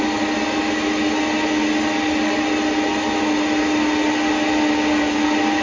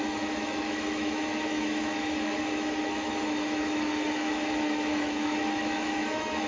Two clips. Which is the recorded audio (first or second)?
first